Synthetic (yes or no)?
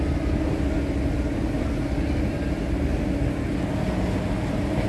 no